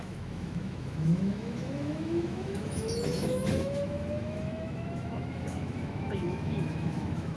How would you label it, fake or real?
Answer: fake